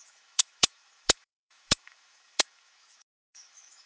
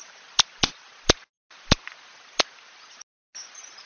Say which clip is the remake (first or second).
first